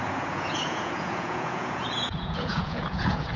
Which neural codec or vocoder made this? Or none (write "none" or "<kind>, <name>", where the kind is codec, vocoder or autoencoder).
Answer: vocoder, Vocos